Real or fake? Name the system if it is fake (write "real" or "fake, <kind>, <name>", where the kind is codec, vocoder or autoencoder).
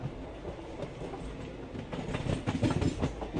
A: real